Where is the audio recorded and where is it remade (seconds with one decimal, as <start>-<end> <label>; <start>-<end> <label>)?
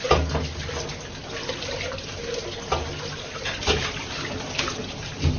0.0-1.2 recorded; 1.2-2.3 remade; 2.3-5.4 recorded